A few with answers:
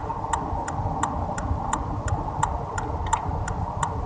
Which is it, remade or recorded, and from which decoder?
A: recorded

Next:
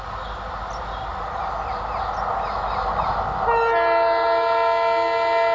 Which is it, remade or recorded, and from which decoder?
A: recorded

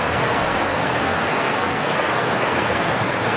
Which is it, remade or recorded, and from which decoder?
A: remade, codec, SNAC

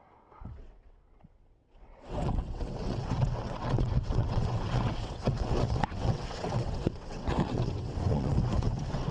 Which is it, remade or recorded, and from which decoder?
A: remade, vocoder, WaveNeXt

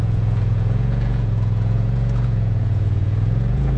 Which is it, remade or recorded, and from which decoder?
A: remade, vocoder, Vocos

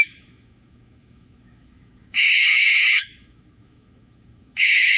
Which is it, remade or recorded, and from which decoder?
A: remade, autoencoder, DAC-VAE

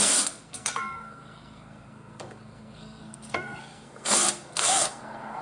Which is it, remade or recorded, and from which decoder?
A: remade, codec, SNAC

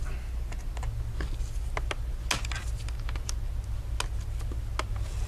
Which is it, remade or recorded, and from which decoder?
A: recorded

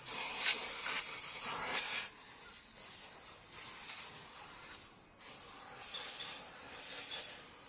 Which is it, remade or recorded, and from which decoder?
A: recorded